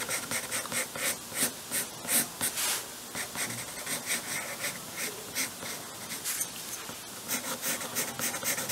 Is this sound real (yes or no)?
yes